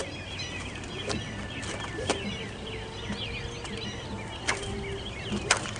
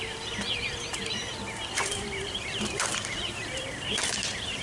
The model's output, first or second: second